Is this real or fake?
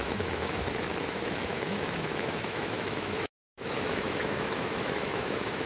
fake